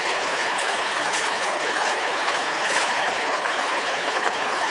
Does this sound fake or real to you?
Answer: fake